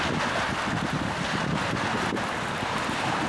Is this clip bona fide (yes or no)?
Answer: yes